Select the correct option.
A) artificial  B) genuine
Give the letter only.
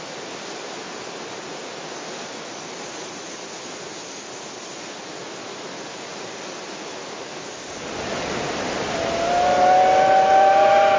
B